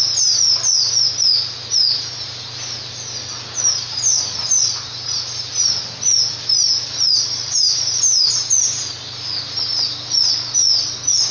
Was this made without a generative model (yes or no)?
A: yes